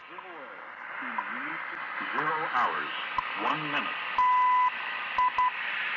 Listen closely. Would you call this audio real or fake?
real